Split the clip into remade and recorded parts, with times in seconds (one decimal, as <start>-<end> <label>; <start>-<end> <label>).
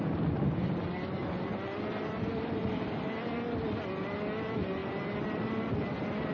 0.0-6.3 recorded